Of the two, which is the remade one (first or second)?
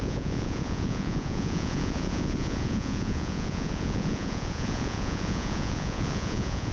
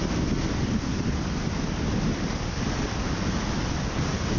first